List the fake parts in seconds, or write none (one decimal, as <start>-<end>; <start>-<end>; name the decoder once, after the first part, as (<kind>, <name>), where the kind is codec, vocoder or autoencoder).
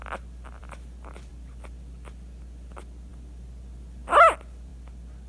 none